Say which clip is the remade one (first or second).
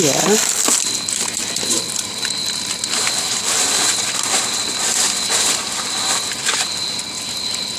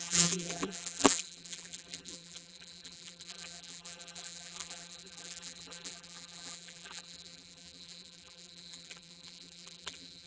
second